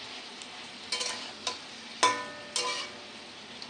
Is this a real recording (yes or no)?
yes